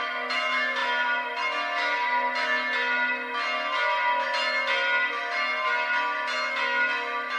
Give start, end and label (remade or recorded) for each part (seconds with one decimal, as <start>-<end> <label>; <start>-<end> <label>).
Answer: 0.0-7.4 recorded